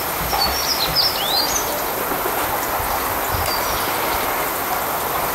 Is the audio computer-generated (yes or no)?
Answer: no